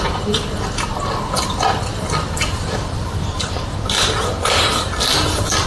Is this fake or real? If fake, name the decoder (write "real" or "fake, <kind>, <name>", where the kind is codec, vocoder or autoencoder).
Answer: real